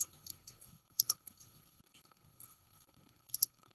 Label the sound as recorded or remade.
remade